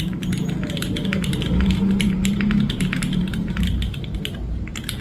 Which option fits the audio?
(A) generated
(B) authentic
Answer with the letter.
A